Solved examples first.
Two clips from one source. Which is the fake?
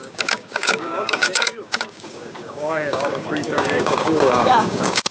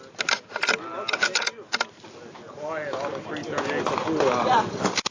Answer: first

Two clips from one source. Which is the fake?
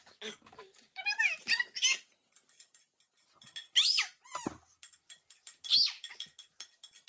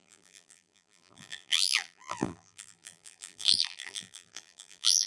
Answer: second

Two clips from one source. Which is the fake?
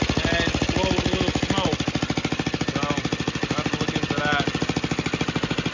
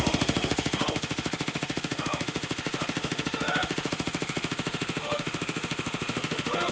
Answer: second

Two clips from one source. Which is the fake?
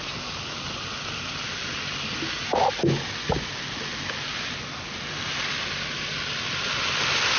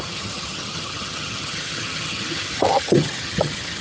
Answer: second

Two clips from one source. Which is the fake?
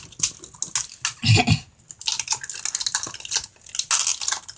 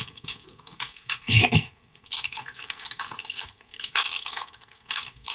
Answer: second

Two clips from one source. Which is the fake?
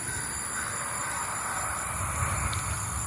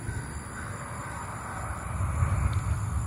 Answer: first